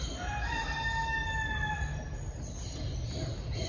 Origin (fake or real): real